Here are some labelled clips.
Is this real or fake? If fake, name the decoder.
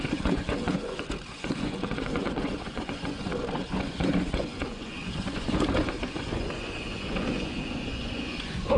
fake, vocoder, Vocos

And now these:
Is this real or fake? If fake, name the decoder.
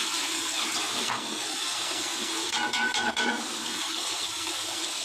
fake, codec, SNAC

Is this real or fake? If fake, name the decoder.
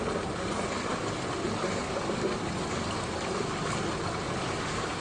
real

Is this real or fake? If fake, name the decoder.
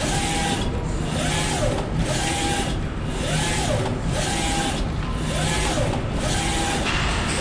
real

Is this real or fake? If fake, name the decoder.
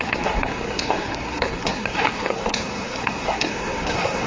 fake, codec, SNAC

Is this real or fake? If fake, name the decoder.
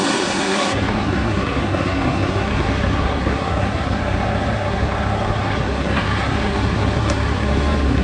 fake, codec, SNAC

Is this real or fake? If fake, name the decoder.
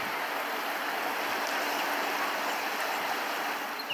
real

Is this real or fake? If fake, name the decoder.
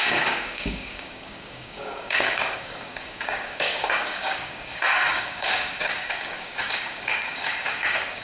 fake, codec, DAC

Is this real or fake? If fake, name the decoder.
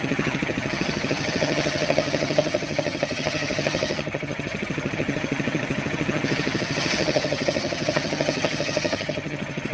fake, vocoder, HiFi-GAN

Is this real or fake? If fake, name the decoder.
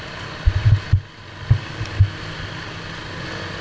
real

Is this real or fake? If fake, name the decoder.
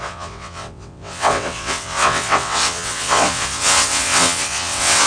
fake, vocoder, WaveNeXt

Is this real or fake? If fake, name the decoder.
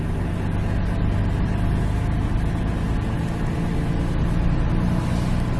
real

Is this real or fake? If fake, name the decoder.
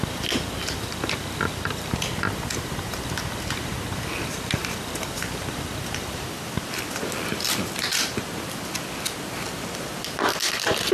real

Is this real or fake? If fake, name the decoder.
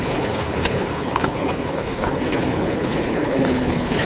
fake, codec, HILCodec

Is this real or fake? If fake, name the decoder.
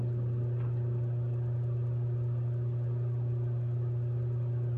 real